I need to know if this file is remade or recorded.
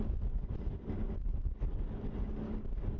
recorded